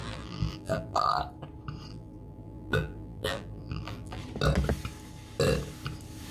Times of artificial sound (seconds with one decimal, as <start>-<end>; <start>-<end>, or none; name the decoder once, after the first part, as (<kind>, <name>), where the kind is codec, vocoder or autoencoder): 0.0-1.1 (vocoder, BigVGAN v2); 1.9-4.2